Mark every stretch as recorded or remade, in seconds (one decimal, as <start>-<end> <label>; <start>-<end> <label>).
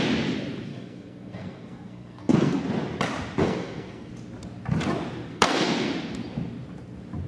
0.0-0.7 recorded; 0.7-2.6 remade; 2.6-3.4 recorded; 3.4-4.1 remade; 4.1-5.3 recorded; 5.3-5.9 remade; 5.9-7.3 recorded